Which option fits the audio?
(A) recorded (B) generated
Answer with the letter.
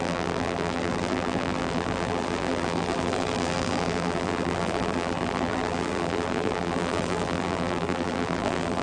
B